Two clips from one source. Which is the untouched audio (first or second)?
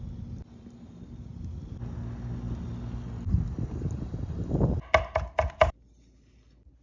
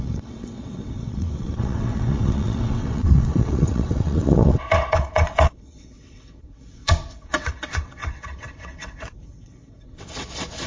first